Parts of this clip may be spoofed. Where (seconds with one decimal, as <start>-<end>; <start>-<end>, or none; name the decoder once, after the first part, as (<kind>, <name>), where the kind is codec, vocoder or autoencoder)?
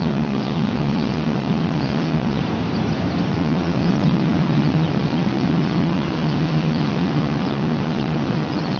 0.0-2.4 (vocoder, WaveNeXt); 3.3-8.8